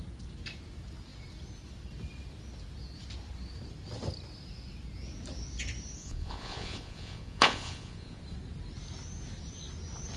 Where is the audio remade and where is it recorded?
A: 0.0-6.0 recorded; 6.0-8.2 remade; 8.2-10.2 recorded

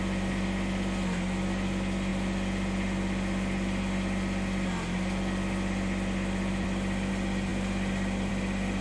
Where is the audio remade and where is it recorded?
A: 0.0-8.8 recorded

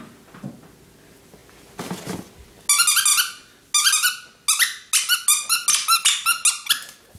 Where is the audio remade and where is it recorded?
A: 0.0-7.2 recorded

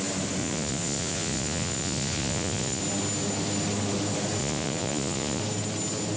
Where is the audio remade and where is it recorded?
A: 0.0-0.4 recorded; 0.4-2.8 remade; 2.8-4.4 recorded; 4.4-5.4 remade; 5.4-6.2 recorded

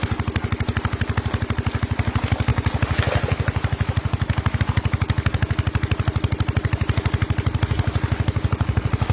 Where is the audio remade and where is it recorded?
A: 0.0-9.1 recorded

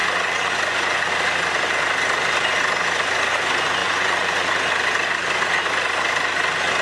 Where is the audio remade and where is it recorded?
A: 0.0-1.1 remade; 1.1-3.8 recorded; 3.8-4.6 remade; 4.6-6.8 recorded